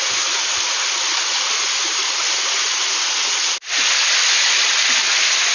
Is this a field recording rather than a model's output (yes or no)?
yes